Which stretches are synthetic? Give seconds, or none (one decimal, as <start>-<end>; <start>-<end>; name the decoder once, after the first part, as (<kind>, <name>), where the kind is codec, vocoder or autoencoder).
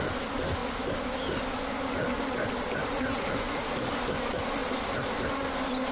2.8-3.9 (vocoder, Vocos)